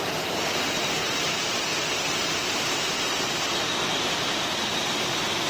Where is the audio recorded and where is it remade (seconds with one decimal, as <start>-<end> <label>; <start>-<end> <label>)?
0.0-1.7 remade; 1.7-3.8 recorded; 3.8-5.5 remade

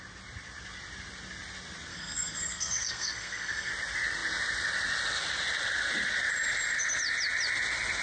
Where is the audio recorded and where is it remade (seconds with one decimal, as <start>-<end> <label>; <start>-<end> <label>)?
0.0-1.9 recorded; 1.9-3.7 remade; 3.7-8.0 recorded

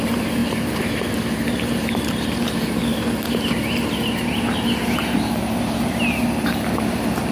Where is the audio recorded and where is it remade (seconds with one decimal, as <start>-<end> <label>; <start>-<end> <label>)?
0.0-7.3 recorded

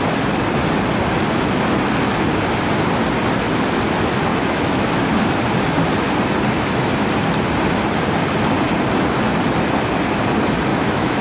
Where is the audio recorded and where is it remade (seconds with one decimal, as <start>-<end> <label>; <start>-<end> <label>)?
0.0-4.3 recorded; 4.3-4.9 remade; 4.9-10.7 recorded; 10.7-11.2 remade